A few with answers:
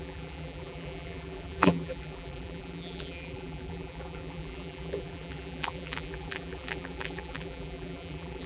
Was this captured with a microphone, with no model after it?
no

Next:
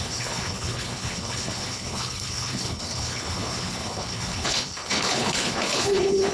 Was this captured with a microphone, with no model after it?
no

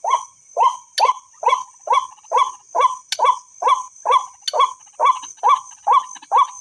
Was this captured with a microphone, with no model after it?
yes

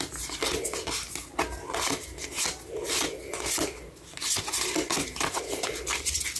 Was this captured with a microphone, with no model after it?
yes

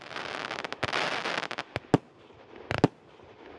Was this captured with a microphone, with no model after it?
yes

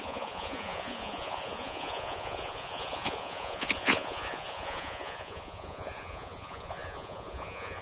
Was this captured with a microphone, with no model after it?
no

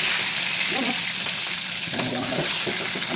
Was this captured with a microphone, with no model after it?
yes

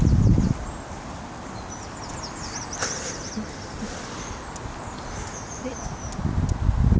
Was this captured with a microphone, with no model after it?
yes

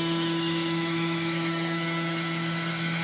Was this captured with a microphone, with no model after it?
no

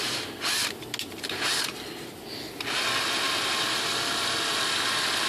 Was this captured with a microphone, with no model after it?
yes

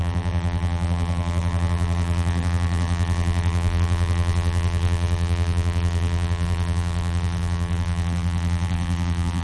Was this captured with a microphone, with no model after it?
no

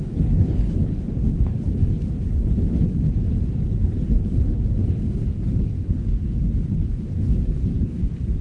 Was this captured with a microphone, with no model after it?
no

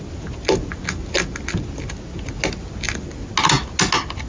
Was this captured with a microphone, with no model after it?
yes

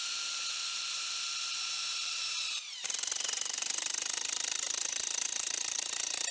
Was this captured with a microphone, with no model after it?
no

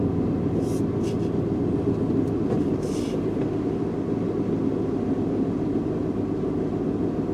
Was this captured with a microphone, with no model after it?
yes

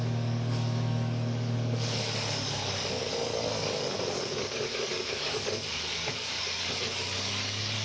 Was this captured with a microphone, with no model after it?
no